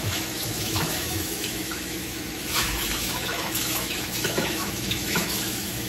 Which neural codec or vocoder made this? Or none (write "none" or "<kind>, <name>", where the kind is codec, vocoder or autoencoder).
autoencoder, DAC-VAE